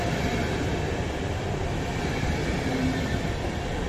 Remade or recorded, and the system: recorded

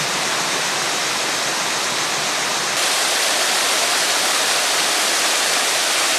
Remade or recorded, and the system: recorded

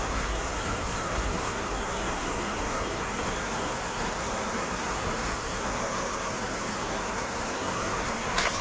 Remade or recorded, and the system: remade, codec, SNAC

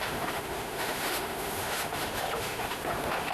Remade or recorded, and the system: remade, autoencoder, DAC-VAE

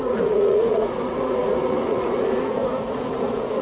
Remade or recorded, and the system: remade, vocoder, Vocos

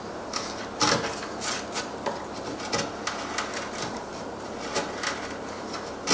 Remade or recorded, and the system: recorded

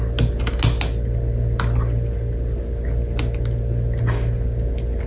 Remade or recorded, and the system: recorded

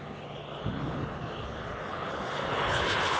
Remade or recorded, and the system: remade, codec, HILCodec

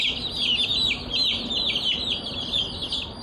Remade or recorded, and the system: recorded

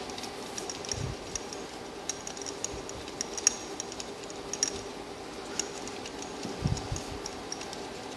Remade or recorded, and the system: recorded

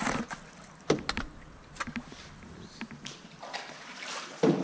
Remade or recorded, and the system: recorded